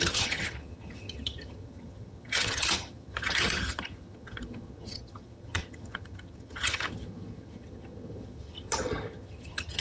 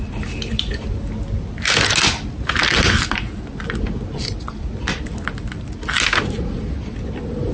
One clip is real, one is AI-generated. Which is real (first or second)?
second